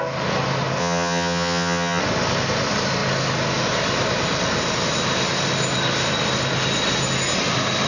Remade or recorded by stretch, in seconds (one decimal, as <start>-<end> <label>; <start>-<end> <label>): 0.0-0.8 recorded; 0.8-2.0 remade; 2.0-7.9 recorded

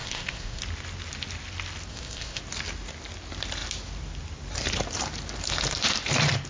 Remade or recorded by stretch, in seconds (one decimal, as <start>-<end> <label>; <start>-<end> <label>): 0.0-0.6 remade; 0.6-1.9 recorded; 1.9-2.4 remade; 2.4-6.5 recorded

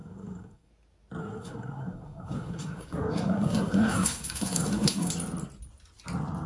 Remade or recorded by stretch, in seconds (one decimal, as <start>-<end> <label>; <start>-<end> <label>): 0.0-0.7 remade; 0.7-1.2 recorded; 1.2-5.1 remade; 5.1-6.5 recorded